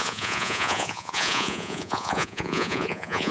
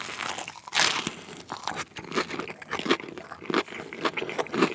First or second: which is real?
second